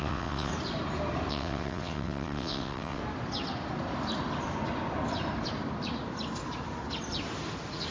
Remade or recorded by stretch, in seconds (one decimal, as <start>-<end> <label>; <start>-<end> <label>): 0.0-0.5 remade; 0.5-1.3 recorded; 1.3-3.0 remade; 3.0-7.9 recorded